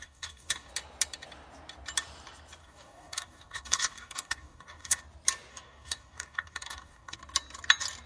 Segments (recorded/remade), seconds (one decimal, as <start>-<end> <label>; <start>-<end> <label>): 0.0-0.7 remade; 0.7-2.6 recorded; 2.6-5.0 remade; 5.0-5.5 recorded; 5.5-7.2 remade; 7.2-8.1 recorded